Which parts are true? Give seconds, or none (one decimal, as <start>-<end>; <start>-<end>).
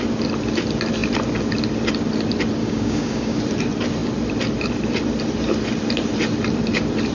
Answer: 0.0-2.6; 3.4-7.1